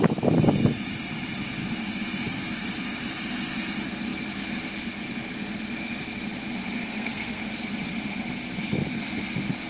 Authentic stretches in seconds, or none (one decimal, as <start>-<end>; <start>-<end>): 0.0-6.8; 7.4-9.7